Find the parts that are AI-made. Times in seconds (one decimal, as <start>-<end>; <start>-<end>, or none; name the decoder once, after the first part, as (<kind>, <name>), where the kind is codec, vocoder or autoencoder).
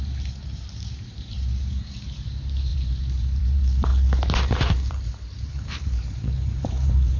0.0-3.9 (vocoder, BigVGAN v2); 4.5-7.2